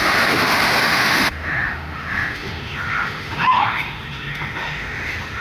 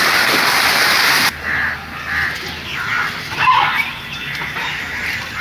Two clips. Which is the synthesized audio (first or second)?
first